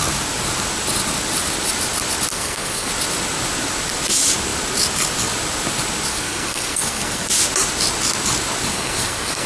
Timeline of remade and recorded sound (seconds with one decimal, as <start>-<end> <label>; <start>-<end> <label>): 0.0-2.3 recorded; 2.3-2.9 remade; 2.9-6.1 recorded; 6.1-7.3 remade; 7.3-8.7 recorded; 8.7-9.5 remade